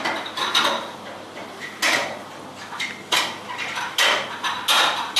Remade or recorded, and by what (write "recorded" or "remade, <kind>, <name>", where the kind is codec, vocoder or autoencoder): recorded